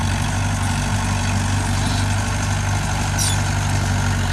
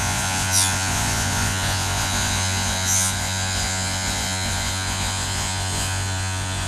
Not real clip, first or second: second